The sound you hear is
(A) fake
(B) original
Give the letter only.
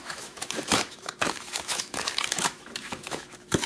A